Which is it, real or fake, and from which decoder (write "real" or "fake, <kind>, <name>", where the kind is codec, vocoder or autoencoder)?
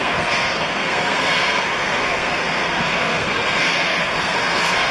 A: fake, codec, SNAC